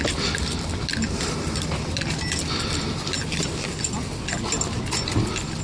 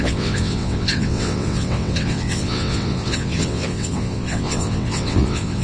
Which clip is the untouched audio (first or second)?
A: first